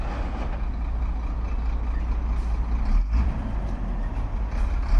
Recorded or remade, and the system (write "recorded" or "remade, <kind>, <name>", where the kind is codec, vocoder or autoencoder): recorded